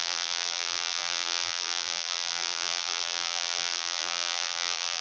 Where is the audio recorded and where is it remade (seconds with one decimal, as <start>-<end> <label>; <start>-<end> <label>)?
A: 0.0-5.0 remade